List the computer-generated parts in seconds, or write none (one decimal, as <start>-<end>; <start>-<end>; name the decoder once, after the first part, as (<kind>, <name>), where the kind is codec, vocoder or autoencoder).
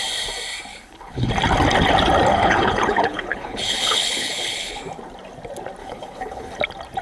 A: 0.7-1.3 (codec, HILCodec); 2.3-4.8; 5.8-6.6